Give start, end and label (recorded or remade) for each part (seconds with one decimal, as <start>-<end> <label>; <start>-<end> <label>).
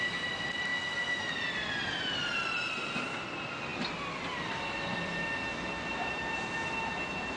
0.0-7.4 recorded